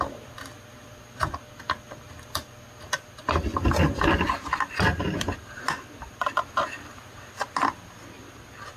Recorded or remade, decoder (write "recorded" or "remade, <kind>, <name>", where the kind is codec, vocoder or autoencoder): recorded